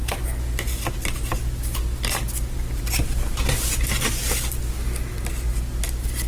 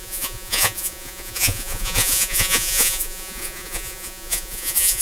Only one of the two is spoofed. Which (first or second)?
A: second